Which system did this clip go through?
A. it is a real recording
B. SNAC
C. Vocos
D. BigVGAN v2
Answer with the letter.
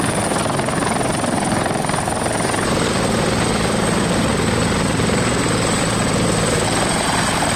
D